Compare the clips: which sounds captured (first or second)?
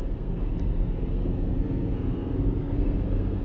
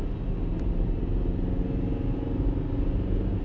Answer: second